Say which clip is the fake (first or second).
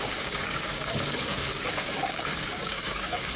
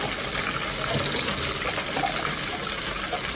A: first